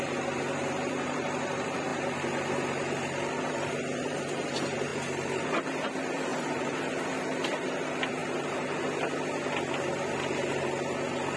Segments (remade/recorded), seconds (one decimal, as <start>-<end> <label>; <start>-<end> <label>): 0.0-1.9 remade; 1.9-3.5 recorded; 3.5-4.9 remade; 4.9-5.6 recorded; 5.6-8.2 remade; 8.2-11.4 recorded